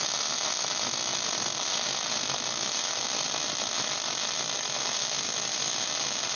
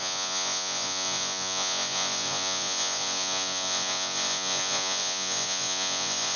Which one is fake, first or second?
second